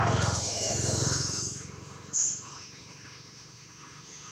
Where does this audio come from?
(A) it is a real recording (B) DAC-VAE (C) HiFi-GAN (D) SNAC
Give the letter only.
B